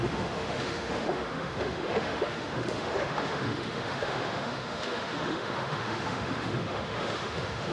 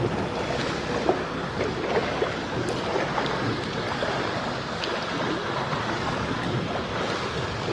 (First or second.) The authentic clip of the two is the second